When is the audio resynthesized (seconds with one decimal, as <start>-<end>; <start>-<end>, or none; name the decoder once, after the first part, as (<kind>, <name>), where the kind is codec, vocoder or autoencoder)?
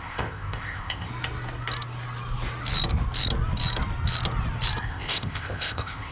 0.0-1.1 (codec, ZipCodec); 4.8-6.1